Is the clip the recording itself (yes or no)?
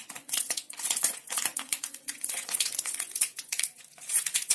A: no